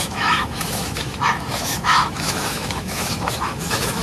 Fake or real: fake